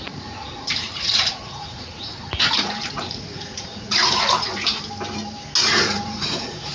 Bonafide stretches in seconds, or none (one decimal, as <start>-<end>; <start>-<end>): 4.7-5.6